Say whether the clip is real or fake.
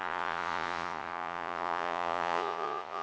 fake